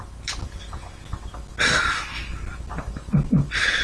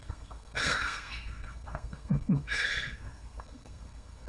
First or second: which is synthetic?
second